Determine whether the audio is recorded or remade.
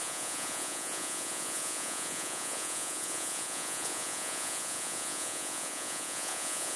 remade